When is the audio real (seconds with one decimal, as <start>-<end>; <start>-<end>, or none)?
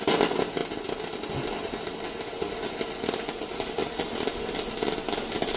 0.0-5.6